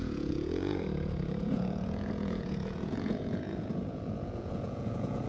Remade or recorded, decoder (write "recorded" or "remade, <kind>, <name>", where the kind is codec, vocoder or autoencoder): remade, vocoder, Vocos